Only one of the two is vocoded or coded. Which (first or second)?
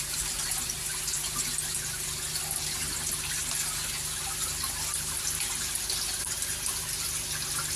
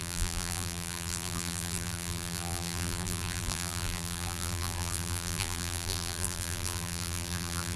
second